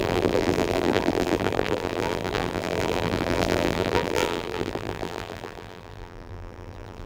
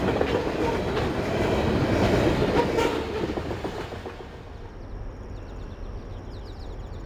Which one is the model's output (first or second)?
first